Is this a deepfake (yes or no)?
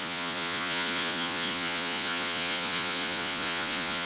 yes